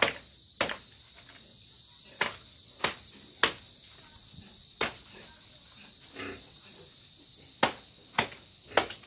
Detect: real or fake real